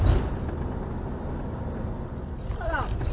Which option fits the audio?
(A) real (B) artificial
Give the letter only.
A